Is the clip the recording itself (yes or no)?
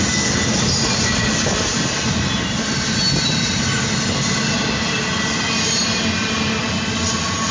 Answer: yes